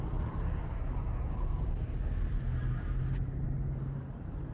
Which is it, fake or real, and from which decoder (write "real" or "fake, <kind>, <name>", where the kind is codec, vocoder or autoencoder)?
real